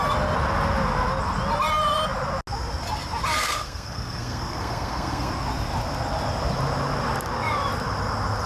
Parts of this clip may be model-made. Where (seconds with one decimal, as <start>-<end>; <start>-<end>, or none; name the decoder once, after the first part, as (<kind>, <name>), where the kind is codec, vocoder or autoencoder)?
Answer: 3.4-5.3 (codec, SNAC)

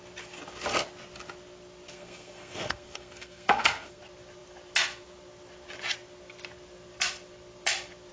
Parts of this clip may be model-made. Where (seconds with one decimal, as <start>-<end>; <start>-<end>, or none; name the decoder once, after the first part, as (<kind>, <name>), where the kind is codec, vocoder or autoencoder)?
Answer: 1.9-4.0 (codec, SNAC)

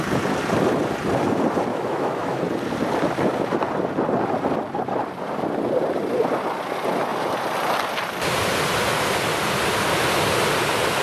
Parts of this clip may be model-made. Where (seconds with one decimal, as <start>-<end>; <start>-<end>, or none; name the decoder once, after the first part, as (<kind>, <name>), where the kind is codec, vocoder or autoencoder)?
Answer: 1.7-2.4 (autoencoder, DAC-VAE)

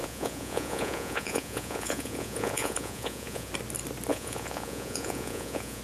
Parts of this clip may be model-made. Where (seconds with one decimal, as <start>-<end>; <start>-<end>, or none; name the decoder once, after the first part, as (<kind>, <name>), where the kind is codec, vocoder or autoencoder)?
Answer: 0.0-3.5 (vocoder, Vocos); 4.1-5.8

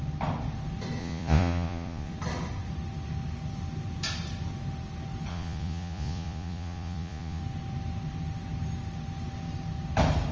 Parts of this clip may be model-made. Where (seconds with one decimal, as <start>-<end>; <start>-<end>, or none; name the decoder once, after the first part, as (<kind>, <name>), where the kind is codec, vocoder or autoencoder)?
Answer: 1.0-2.1 (vocoder, Vocos); 5.3-7.4

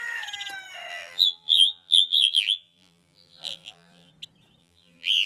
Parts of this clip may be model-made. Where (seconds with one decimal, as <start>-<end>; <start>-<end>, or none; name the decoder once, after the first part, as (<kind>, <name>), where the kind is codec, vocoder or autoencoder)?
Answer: 0.9-4.1 (vocoder, BigVGAN v2); 4.6-5.3